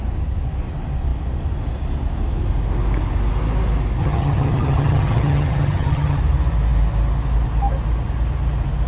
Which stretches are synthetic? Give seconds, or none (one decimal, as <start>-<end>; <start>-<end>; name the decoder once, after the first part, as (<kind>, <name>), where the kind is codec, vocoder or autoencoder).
4.0-6.2 (vocoder, HiFi-GAN)